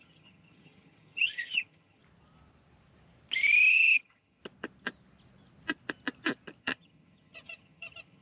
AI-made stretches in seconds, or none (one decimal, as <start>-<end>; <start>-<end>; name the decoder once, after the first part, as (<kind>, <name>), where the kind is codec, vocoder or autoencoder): 0.0-2.0 (vocoder, HiFi-GAN); 3.7-4.4; 6.6-8.2